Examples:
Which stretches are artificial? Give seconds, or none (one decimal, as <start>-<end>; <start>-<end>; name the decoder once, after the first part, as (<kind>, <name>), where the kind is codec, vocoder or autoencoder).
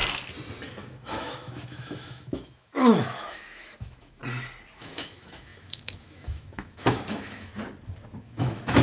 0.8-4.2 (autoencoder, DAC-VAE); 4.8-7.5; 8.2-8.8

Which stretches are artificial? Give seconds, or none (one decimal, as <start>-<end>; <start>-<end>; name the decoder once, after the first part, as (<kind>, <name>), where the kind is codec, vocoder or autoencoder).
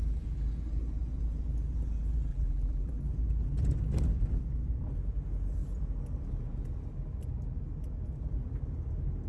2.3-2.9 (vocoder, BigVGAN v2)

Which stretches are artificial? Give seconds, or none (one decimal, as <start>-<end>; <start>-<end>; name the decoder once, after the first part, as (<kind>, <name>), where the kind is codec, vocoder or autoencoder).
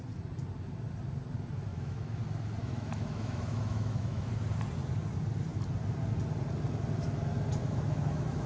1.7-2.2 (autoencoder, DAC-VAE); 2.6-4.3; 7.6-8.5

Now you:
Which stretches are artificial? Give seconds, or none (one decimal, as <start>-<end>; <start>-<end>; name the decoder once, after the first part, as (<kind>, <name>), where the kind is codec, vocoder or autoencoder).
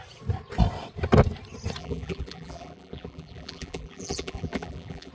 1.8-5.1 (vocoder, BigVGAN v2)